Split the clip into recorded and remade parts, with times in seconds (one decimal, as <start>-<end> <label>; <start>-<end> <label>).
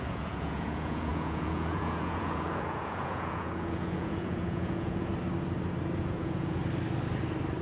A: 0.0-5.1 remade; 5.1-6.0 recorded; 6.0-6.6 remade; 6.6-7.6 recorded